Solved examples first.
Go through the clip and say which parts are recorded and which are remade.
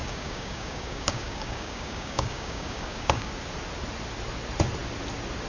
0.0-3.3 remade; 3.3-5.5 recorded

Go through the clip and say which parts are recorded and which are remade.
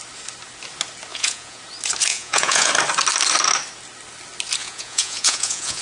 0.0-1.1 recorded; 1.1-1.6 remade; 1.6-2.1 recorded; 2.1-2.7 remade; 2.7-4.6 recorded; 4.6-5.8 remade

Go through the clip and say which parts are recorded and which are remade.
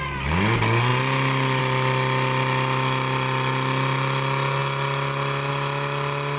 0.0-6.4 recorded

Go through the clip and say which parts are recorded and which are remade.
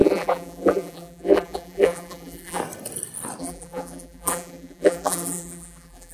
0.0-2.6 remade; 2.6-3.4 recorded; 3.4-6.1 remade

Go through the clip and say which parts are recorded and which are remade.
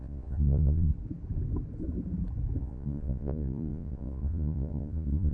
0.0-0.9 remade; 0.9-2.6 recorded; 2.6-5.3 remade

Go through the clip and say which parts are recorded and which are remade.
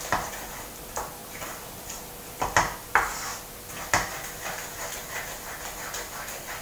0.0-6.6 remade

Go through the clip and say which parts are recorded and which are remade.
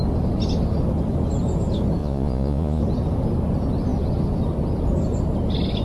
0.0-2.0 recorded; 2.0-2.8 remade; 2.8-5.8 recorded